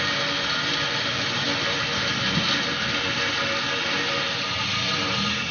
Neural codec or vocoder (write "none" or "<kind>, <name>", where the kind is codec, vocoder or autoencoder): none